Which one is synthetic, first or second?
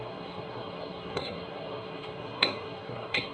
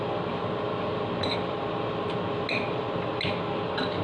first